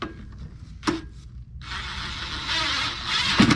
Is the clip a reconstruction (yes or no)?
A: no